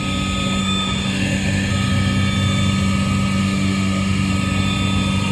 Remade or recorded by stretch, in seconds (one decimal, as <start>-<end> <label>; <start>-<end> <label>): 0.0-0.6 recorded; 0.6-1.7 remade; 1.7-3.4 recorded; 3.4-4.3 remade; 4.3-5.3 recorded